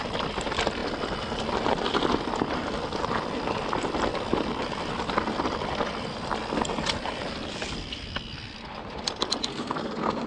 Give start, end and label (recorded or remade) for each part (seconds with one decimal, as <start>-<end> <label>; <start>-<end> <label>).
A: 0.0-9.5 recorded; 9.5-10.3 remade